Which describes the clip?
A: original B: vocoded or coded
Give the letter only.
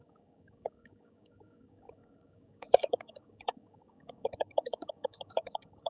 B